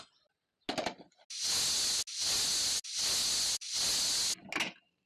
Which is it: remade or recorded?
recorded